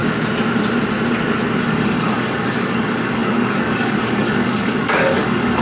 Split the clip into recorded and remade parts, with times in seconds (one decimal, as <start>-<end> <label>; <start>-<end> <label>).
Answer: 0.0-1.6 recorded; 1.6-5.6 remade